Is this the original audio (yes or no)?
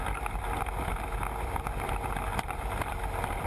yes